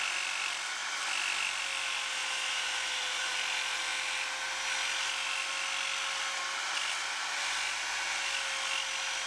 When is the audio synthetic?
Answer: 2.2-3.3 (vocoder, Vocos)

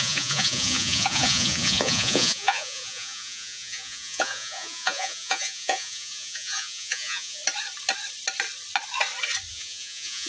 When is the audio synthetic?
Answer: 0.0-7.4 (vocoder, Vocos); 9.5-10.3

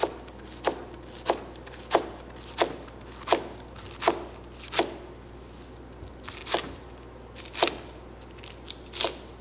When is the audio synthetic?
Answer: none

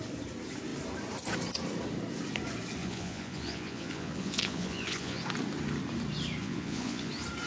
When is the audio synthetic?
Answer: 2.8-5.2 (vocoder, Vocos); 6.4-7.1

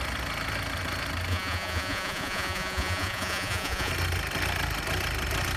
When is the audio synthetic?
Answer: 1.3-3.9 (vocoder, Vocos)

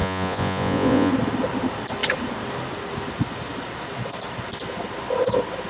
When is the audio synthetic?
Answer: 0.0-1.1 (vocoder, Vocos)

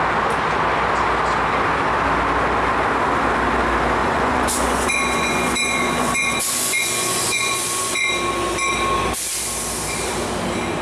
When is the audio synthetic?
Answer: 4.0-8.1 (vocoder, Vocos)

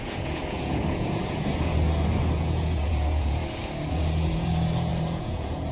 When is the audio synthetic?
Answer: 0.0-1.7 (vocoder, Vocos); 2.3-3.4; 3.9-5.7